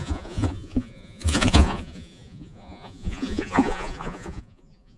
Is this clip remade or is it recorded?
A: remade